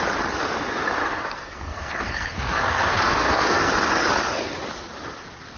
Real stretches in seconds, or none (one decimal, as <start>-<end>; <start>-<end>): 0.0-1.0; 3.7-5.6

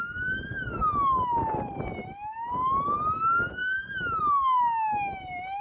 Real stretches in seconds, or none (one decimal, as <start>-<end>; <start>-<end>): 0.0-5.6

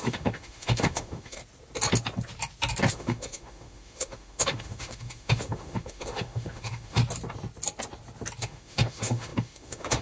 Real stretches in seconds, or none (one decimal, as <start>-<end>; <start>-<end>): 1.4-2.9; 7.0-8.4